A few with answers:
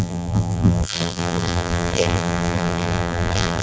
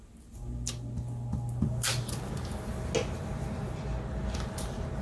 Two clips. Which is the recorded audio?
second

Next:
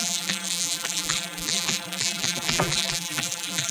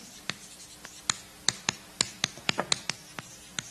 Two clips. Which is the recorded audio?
second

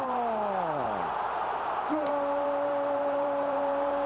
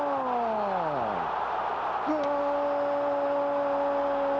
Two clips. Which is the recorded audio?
second